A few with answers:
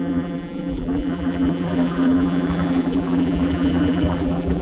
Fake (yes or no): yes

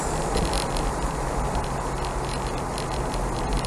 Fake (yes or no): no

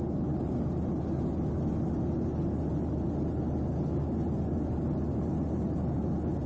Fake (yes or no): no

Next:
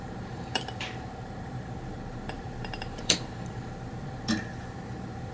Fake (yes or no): yes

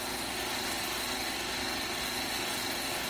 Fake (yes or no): no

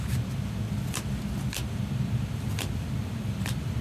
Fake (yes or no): yes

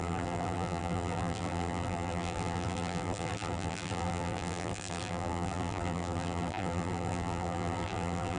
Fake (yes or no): yes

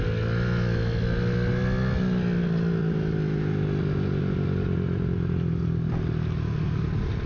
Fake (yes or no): no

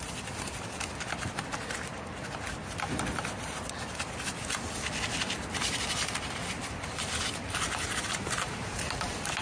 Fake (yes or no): yes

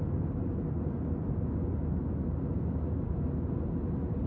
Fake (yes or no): no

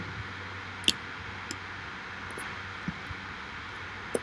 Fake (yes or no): no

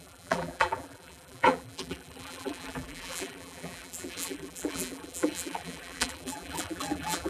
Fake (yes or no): yes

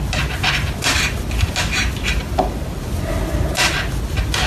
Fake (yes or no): no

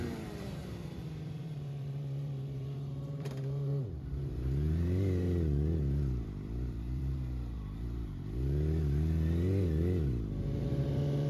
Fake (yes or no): yes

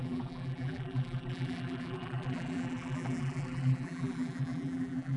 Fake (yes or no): yes